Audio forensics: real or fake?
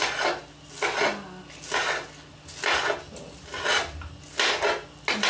real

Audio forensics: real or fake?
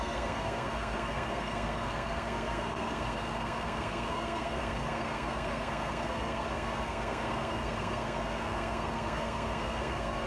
fake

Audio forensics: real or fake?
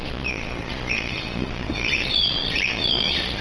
fake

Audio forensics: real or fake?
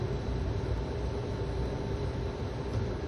real